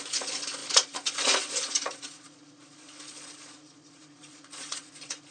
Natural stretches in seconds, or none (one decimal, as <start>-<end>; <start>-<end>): none